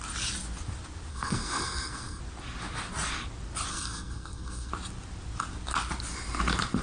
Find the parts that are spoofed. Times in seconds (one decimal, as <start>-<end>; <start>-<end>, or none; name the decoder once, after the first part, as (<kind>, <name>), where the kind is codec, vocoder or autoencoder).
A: 1.1-2.2 (codec, SNAC); 3.7-4.7